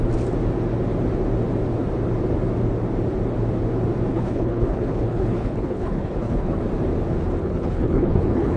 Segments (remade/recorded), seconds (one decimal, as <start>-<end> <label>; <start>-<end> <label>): 0.0-4.1 recorded; 4.1-6.6 remade; 6.6-7.4 recorded; 7.4-8.6 remade

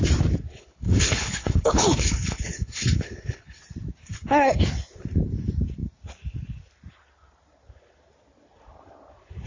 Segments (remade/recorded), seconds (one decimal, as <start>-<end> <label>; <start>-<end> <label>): 0.0-0.5 recorded; 0.5-3.6 remade; 3.6-4.0 recorded; 4.0-4.6 remade; 4.6-9.5 recorded

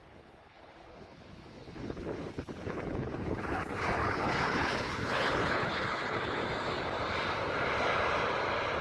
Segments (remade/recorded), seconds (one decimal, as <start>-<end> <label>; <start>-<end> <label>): 0.0-6.4 remade; 6.4-8.8 recorded

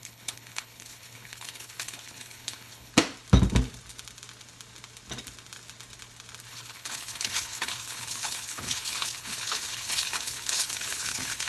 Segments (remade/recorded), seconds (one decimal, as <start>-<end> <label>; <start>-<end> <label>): 0.0-2.9 remade; 2.9-6.5 recorded; 6.5-11.5 remade

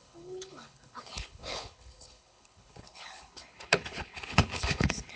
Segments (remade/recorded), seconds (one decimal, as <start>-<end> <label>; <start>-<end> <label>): 0.0-5.2 remade